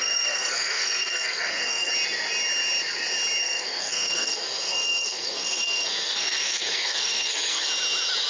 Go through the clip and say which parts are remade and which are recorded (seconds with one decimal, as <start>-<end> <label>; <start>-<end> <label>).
0.0-1.9 remade; 1.9-3.4 recorded; 3.4-7.7 remade; 7.7-8.3 recorded